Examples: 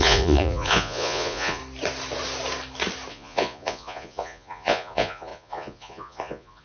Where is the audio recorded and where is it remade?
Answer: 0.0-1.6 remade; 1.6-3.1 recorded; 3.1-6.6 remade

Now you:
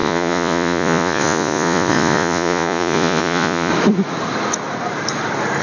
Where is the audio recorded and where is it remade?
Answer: 0.0-3.7 remade; 3.7-5.6 recorded

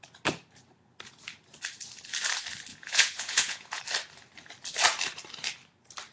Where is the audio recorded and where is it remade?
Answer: 0.0-2.7 recorded; 2.7-3.8 remade; 3.8-6.1 recorded

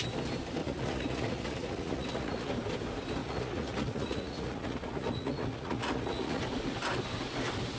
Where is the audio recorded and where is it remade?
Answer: 0.0-0.6 recorded; 0.6-2.5 remade; 2.5-3.2 recorded; 3.2-6.4 remade; 6.4-7.8 recorded

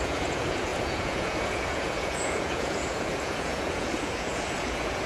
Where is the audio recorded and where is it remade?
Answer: 0.0-5.1 remade